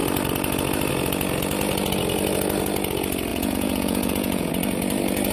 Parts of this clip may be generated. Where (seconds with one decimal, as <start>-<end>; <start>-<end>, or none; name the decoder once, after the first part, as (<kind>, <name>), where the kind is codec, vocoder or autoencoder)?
3.3-4.5 (vocoder, Vocos)